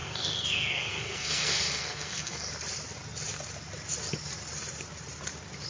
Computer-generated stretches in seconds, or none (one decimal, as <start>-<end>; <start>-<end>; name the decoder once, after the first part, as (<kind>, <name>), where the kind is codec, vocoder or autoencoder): 0.0-2.5 (codec, SNAC)